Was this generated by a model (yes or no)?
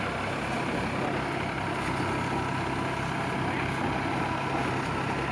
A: no